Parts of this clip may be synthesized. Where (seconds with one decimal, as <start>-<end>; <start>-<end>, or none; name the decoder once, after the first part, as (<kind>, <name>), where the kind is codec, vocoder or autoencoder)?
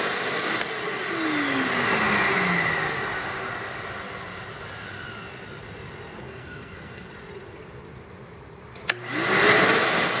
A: 6.2-7.1 (codec, SNAC)